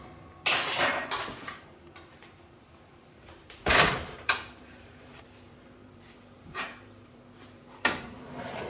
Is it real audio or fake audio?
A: fake